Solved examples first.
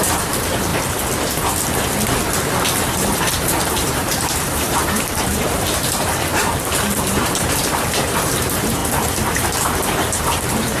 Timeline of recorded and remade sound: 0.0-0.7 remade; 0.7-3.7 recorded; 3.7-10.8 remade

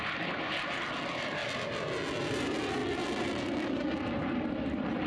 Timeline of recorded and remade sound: 0.0-1.4 remade; 1.4-2.2 recorded; 2.2-5.1 remade

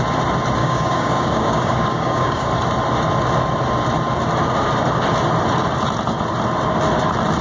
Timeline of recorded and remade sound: 0.0-0.6 recorded; 0.6-2.5 remade; 2.5-7.4 recorded

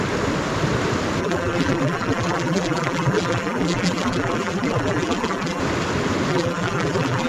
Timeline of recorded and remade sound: 0.0-1.2 recorded; 1.2-5.6 remade; 5.6-6.3 recorded; 6.3-7.3 remade

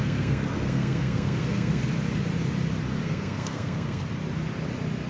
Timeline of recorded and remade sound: 0.0-1.8 remade; 1.8-3.0 recorded; 3.0-4.0 remade; 4.0-5.1 recorded